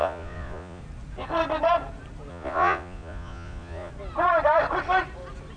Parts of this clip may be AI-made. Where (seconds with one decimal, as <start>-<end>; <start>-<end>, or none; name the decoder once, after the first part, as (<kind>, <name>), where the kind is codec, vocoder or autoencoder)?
0.0-0.8 (vocoder, Vocos); 2.3-3.9

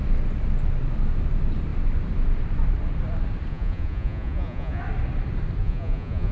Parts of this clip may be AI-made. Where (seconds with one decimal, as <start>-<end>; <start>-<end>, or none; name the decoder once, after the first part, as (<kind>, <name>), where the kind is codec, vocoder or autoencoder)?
3.5-4.8 (vocoder, Vocos); 5.6-6.3

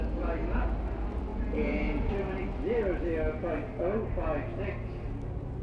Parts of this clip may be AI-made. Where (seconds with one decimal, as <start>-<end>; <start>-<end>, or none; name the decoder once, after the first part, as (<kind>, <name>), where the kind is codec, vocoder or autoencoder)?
1.3-2.1 (vocoder, Vocos)

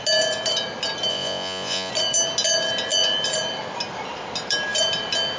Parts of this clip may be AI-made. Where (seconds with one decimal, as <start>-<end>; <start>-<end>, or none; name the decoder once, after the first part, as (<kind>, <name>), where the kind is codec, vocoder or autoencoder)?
1.1-1.9 (vocoder, Vocos)

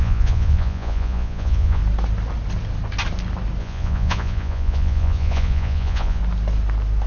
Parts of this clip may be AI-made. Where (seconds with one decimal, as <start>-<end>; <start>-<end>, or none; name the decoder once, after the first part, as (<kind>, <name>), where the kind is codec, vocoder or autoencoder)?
0.0-1.8 (vocoder, Vocos); 3.6-6.2

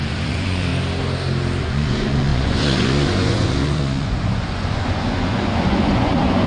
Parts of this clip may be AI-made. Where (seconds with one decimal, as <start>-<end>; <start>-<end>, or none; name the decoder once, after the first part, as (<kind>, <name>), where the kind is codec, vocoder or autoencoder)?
0.0-0.7 (vocoder, Vocos); 1.6-6.5

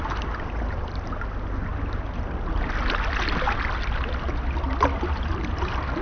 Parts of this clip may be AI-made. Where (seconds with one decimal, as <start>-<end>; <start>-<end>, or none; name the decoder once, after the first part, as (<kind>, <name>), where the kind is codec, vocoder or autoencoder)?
none